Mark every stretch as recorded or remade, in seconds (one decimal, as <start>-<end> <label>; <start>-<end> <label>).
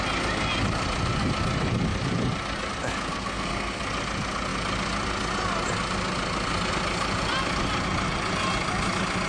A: 0.0-3.1 recorded; 3.1-3.8 remade; 3.8-9.3 recorded